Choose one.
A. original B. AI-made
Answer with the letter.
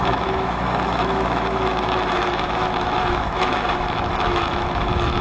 B